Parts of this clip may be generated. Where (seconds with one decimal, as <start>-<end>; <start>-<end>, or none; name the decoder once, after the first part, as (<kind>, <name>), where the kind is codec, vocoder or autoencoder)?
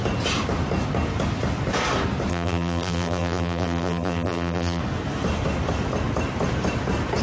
2.3-4.8 (vocoder, BigVGAN v2)